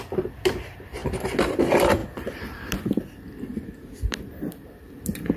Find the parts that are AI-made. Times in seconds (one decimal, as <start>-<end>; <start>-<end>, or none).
0.0-1.0; 1.6-2.0; 2.9-3.5; 4.1-5.4